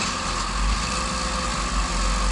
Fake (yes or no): no